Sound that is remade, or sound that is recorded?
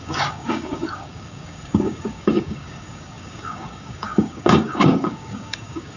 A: remade